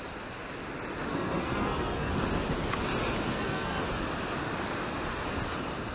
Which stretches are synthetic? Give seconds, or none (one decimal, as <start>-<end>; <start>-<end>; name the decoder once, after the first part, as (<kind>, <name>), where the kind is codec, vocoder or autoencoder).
1.1-2.1 (codec, SNAC); 3.3-3.8